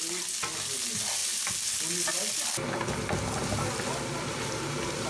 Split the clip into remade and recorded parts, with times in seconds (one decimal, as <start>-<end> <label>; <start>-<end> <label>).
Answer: 0.0-5.1 recorded